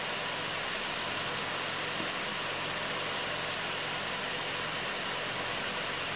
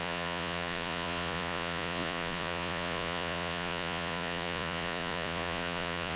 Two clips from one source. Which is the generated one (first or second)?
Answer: second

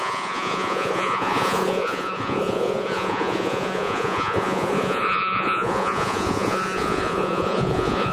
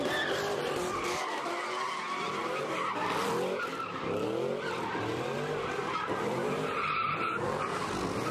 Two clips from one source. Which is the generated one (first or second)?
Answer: first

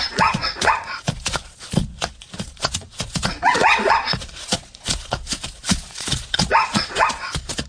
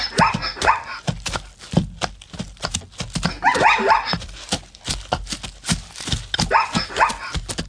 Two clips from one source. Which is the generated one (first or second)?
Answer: first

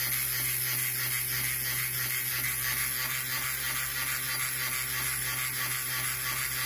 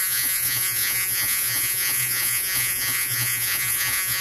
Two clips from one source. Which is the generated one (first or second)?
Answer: second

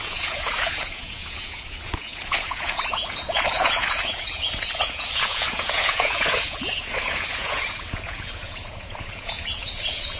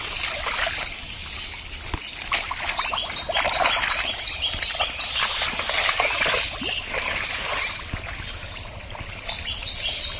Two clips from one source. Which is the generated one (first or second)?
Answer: first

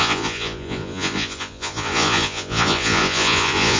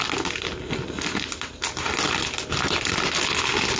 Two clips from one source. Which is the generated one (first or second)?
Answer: first